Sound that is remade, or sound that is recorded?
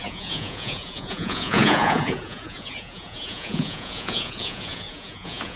remade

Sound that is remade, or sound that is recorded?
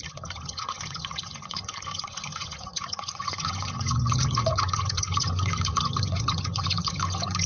remade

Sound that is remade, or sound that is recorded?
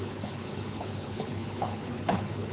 remade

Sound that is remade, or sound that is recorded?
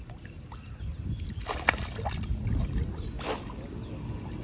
recorded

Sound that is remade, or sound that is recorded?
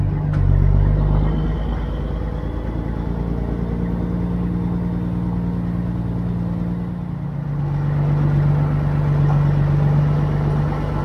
recorded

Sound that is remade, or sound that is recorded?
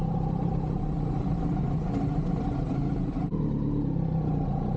recorded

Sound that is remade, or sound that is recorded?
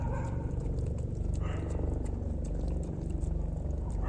remade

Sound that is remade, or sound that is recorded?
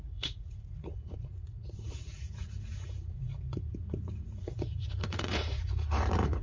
remade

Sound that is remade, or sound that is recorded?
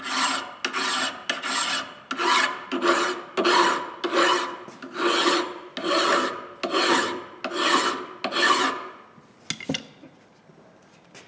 recorded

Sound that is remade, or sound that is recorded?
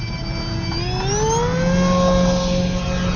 recorded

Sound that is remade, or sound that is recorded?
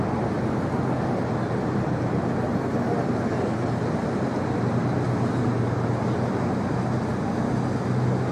recorded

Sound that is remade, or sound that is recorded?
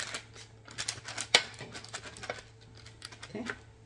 recorded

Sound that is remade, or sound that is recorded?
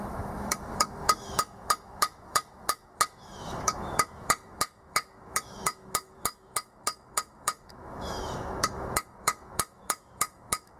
remade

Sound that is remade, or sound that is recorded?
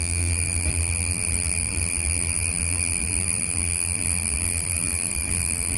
remade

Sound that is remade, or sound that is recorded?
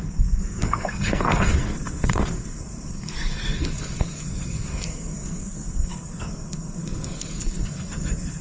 remade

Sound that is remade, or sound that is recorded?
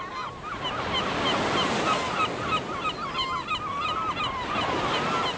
recorded